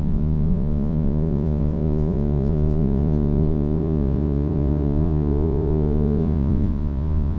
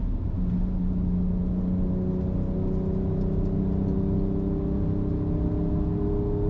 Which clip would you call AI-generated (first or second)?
first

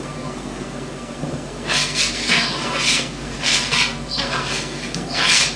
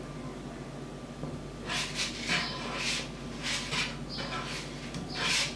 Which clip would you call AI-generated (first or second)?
first